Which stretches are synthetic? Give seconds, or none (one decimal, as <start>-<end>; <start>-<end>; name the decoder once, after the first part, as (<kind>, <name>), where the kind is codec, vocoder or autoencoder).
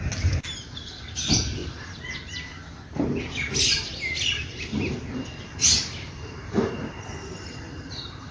none